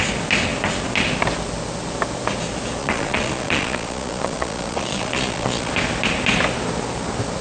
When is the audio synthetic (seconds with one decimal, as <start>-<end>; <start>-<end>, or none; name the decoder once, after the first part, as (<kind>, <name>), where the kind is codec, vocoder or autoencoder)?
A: 2.8-5.7 (vocoder, Vocos)